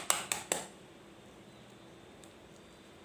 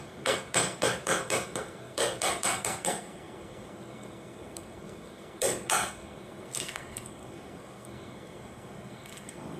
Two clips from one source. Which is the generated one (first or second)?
second